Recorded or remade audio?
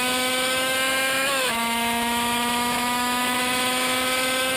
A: remade